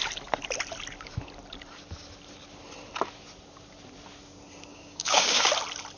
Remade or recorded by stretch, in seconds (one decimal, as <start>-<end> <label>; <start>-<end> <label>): 0.0-4.7 recorded; 4.7-5.5 remade; 5.5-6.0 recorded